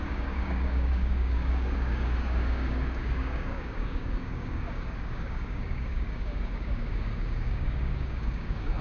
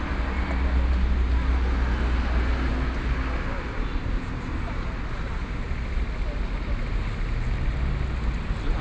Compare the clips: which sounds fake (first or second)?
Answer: first